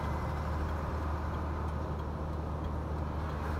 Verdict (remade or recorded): recorded